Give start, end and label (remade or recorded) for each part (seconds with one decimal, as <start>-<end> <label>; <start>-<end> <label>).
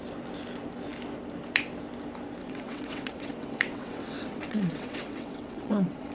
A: 0.0-2.4 recorded; 2.4-6.1 remade